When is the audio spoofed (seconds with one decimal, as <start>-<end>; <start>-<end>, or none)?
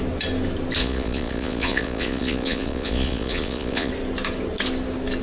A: 0.8-3.9